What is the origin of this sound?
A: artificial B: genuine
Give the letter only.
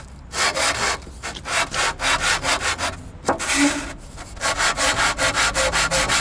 B